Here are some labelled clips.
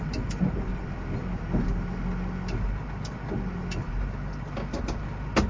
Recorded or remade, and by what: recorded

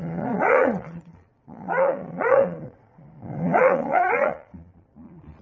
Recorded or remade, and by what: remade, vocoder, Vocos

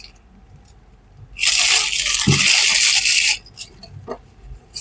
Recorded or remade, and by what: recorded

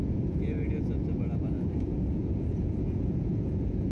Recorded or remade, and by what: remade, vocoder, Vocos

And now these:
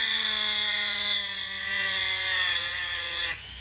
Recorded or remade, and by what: remade, vocoder, Vocos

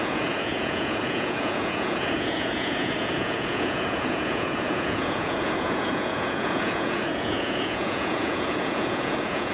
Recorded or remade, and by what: remade, vocoder, Vocos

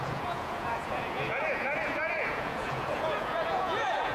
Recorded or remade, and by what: remade, vocoder, Vocos